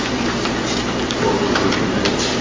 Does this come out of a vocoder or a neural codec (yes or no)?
yes